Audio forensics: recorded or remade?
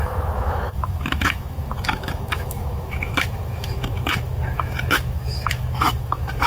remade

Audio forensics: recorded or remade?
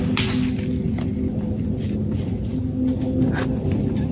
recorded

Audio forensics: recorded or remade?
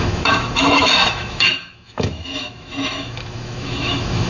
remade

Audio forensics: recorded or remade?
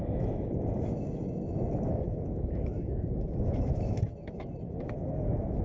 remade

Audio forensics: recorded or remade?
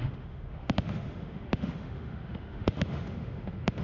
remade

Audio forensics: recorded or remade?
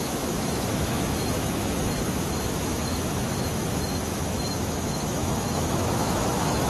remade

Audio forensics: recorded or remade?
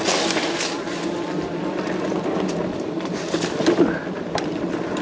recorded